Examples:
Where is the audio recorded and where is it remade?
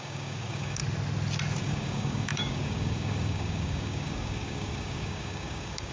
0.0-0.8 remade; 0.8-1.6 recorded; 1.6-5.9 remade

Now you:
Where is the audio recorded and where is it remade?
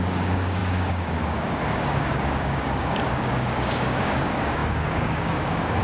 0.0-5.8 remade